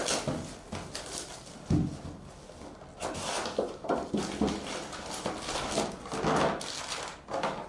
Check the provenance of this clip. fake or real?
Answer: real